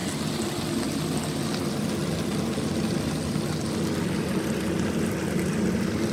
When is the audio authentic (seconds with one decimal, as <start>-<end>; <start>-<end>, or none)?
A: 0.0-6.1